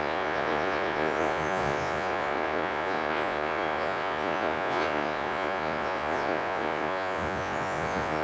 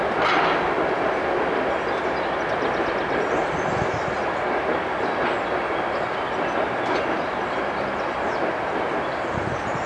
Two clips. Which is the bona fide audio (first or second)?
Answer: second